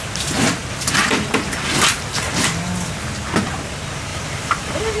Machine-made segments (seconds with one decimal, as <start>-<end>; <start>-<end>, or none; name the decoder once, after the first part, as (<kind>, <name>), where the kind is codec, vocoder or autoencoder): 4.1-5.0 (vocoder, BigVGAN v2)